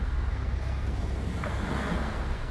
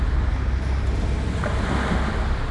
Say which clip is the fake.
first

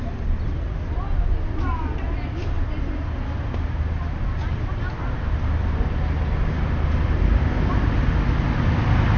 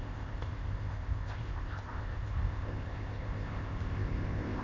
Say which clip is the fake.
second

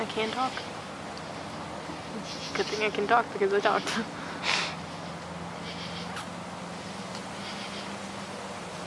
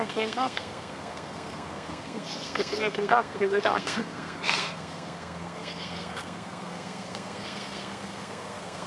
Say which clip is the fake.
second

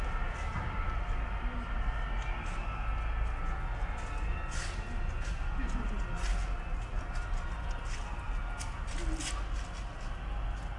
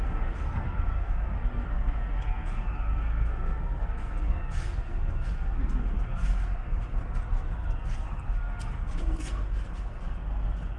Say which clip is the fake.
second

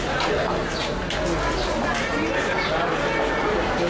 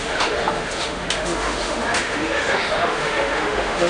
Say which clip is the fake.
second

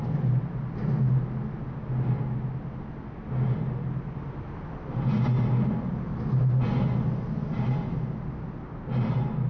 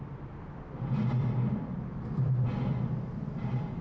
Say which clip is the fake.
second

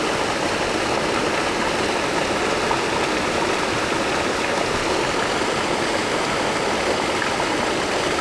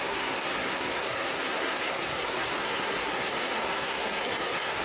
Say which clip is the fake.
second